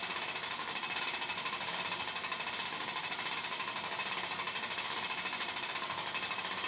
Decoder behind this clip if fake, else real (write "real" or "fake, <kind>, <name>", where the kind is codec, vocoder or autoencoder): fake, vocoder, BigVGAN v2